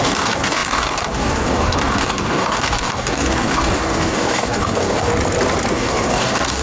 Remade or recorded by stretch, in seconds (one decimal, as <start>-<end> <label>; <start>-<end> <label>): 0.0-5.1 remade; 5.1-5.7 recorded; 5.7-6.6 remade